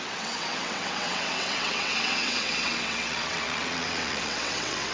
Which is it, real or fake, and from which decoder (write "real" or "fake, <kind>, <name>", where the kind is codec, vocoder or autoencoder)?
fake, vocoder, WaveNeXt